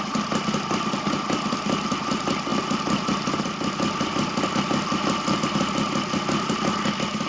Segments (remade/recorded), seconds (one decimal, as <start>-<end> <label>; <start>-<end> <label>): 0.0-7.3 recorded